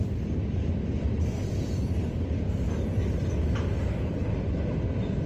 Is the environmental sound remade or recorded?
recorded